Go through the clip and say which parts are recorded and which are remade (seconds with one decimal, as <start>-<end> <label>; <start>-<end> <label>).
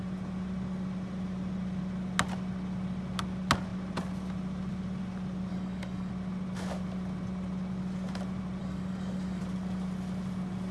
0.0-5.5 recorded; 5.5-6.1 remade; 6.1-8.6 recorded; 8.6-9.4 remade; 9.4-10.7 recorded